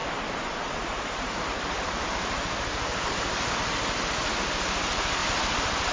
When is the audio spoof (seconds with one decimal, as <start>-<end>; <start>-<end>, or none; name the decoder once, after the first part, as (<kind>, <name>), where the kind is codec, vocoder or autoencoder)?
0.0-3.5 (vocoder, BigVGAN v2); 5.2-5.9